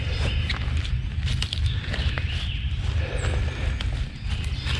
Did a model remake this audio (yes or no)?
no